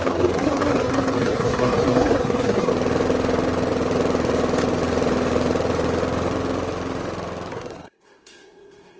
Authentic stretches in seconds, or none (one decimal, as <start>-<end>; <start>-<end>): 2.7-7.5